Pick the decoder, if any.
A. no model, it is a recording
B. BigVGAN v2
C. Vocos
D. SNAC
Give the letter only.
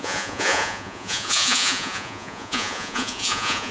C